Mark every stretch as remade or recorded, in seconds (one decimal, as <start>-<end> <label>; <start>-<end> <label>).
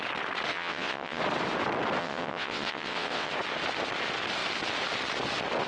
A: 0.0-0.5 recorded; 0.5-1.2 remade; 1.2-2.0 recorded; 2.0-3.3 remade; 3.3-5.7 recorded